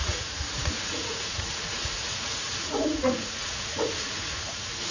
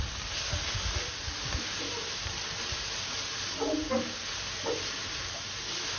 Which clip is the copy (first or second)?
first